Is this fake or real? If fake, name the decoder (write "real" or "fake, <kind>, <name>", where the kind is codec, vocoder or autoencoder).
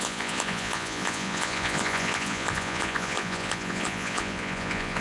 fake, vocoder, Vocos